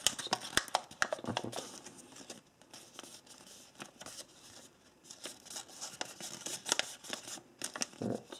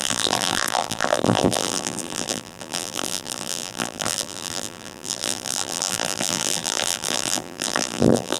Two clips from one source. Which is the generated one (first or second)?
second